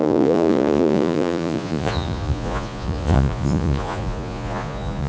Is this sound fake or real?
fake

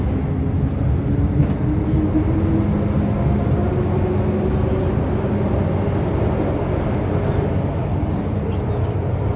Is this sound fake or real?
real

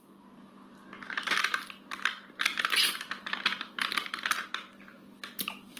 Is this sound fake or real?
real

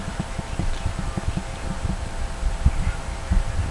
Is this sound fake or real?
real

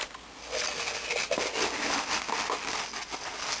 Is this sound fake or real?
real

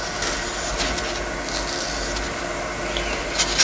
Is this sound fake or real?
real